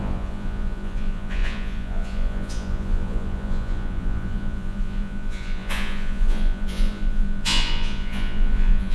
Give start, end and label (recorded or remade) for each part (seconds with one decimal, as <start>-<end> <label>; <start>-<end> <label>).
0.0-8.9 remade

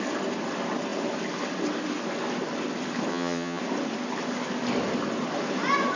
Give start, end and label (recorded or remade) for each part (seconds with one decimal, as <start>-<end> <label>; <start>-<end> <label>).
0.0-3.1 recorded; 3.1-3.6 remade; 3.6-6.0 recorded

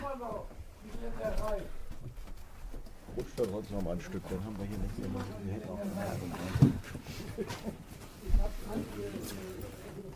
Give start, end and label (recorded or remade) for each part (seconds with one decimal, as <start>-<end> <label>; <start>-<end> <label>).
0.0-1.8 remade; 1.8-5.6 recorded; 5.6-10.2 remade

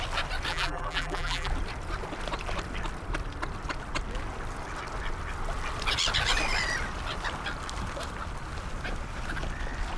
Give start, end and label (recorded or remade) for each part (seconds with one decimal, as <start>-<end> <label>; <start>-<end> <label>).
0.0-0.5 recorded; 0.5-1.5 remade; 1.5-10.0 recorded

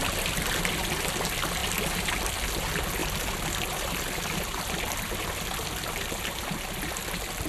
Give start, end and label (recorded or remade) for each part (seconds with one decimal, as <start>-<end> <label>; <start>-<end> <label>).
0.0-7.5 recorded

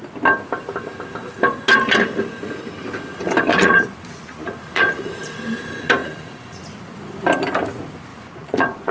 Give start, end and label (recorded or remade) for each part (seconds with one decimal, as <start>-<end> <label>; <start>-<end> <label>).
0.0-3.5 recorded; 3.5-5.2 remade; 5.2-6.0 recorded; 6.0-6.6 remade; 6.6-8.1 recorded; 8.1-8.9 remade

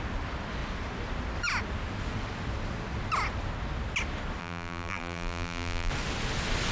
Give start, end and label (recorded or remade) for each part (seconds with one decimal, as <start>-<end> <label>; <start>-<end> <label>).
0.0-4.4 recorded; 4.4-5.9 remade; 5.9-6.7 recorded